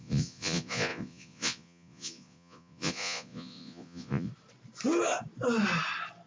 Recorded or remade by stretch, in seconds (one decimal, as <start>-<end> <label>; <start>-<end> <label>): 0.0-4.3 remade; 4.3-6.3 recorded